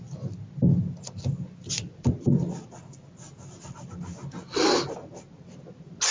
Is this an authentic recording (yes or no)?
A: yes